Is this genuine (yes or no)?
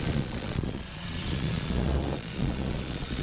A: no